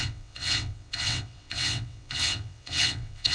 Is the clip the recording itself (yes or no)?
no